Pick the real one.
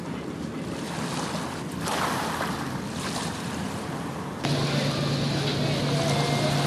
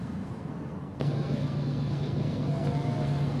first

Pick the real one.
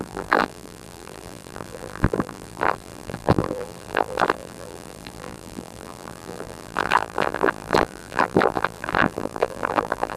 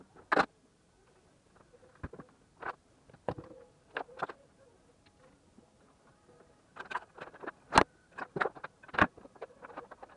second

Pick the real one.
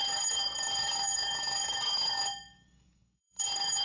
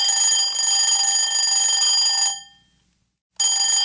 second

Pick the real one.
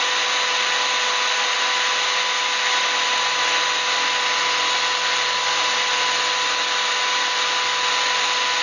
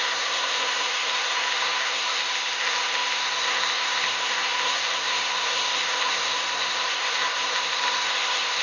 first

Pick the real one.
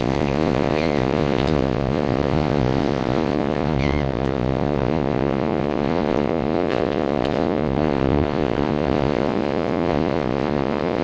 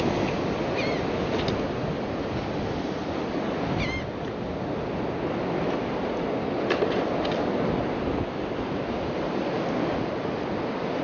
second